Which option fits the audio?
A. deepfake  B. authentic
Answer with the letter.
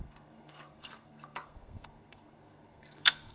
A